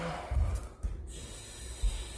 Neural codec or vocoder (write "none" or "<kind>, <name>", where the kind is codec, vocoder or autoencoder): none